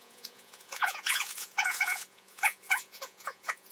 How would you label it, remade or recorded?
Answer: remade